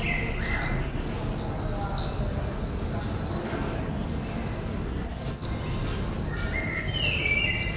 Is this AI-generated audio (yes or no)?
no